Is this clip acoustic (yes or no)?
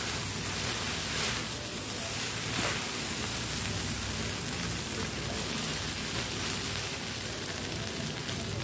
yes